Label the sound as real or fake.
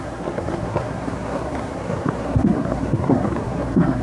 fake